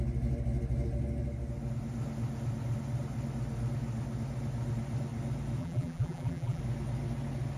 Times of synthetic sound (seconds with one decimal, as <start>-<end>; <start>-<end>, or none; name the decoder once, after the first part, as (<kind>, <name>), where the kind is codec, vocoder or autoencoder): 5.6-6.6 (vocoder, BigVGAN v2)